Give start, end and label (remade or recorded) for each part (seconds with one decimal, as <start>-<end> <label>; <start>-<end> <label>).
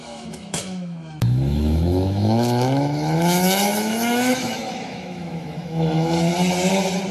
0.0-6.3 remade; 6.3-7.1 recorded